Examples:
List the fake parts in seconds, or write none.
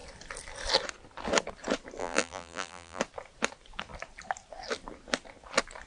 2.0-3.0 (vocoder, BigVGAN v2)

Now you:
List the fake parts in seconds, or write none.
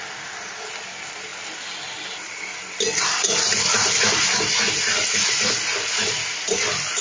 1.3-5.5 (vocoder, BigVGAN v2)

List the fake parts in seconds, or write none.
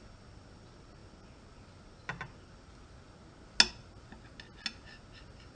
none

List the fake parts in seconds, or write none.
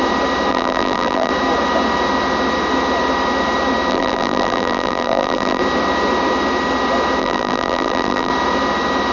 0.5-1.3 (vocoder, BigVGAN v2); 3.9-5.6; 7.2-8.3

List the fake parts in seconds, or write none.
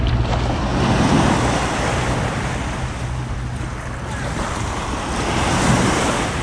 0.7-1.3 (vocoder, BigVGAN v2)